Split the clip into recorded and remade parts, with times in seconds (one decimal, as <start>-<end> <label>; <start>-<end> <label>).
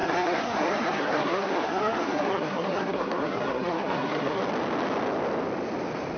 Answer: 0.0-4.4 remade; 4.4-6.2 recorded